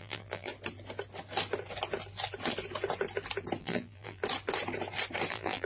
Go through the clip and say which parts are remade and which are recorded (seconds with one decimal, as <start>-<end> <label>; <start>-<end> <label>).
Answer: 0.0-0.5 remade; 0.5-3.6 recorded; 3.6-4.2 remade; 4.2-5.3 recorded; 5.3-5.7 remade